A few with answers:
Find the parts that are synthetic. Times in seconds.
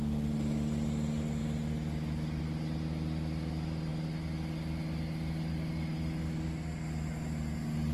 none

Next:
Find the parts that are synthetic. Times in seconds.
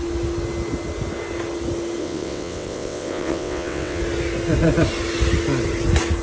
2.0-4.0 (vocoder, WaveNeXt)